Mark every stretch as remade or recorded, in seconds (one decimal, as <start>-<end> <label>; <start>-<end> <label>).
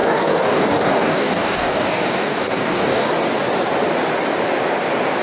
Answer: 0.0-3.1 remade; 3.1-5.2 recorded